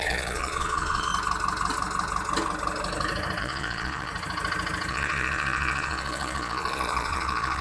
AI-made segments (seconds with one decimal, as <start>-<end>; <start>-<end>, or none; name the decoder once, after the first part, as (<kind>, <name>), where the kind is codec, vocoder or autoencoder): 0.0-1.1 (vocoder, Vocos); 3.4-4.1; 4.9-7.6